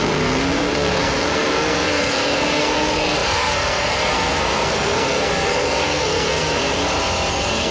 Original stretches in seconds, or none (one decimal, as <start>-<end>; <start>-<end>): 6.8-7.3